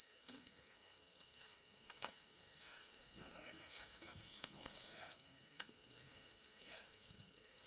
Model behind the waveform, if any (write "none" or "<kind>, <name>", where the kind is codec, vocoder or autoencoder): codec, SNAC